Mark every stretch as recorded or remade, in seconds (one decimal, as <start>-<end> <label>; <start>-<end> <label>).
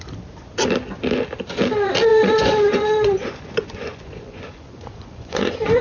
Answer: 0.0-2.1 recorded; 2.1-5.8 remade